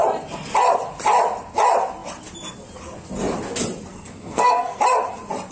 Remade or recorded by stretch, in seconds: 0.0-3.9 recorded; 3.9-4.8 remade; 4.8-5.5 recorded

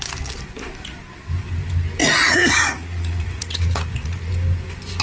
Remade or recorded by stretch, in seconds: 0.0-2.0 recorded; 2.0-4.3 remade; 4.3-5.0 recorded

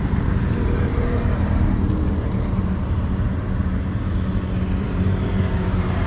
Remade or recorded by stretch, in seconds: 0.0-3.6 remade; 3.6-4.8 recorded; 4.8-6.1 remade